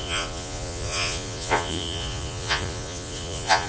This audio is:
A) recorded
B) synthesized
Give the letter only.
B